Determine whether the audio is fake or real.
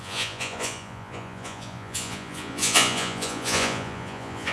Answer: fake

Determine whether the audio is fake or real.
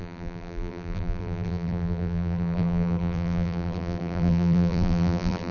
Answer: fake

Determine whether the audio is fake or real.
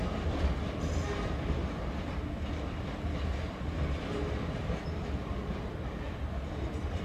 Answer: real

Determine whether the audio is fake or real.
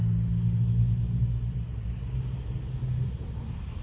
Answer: real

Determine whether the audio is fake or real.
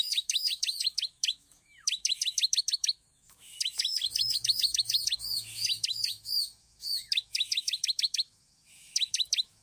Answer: fake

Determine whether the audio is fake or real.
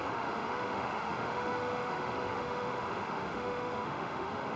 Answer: fake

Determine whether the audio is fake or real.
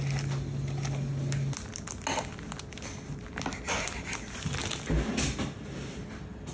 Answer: real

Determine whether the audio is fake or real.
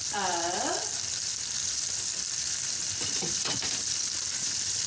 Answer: fake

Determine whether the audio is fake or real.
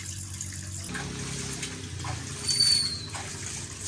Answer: real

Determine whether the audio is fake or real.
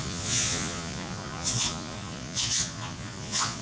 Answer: fake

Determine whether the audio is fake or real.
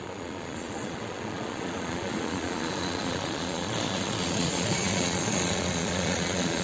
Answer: fake